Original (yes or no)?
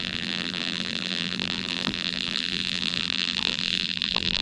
no